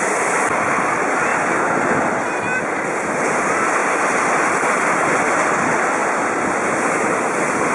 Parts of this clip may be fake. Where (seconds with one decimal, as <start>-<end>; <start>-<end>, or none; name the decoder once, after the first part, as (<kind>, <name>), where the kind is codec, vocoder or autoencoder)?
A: none